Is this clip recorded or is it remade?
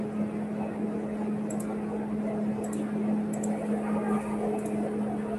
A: recorded